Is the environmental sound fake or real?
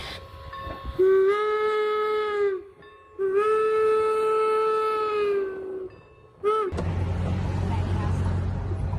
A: real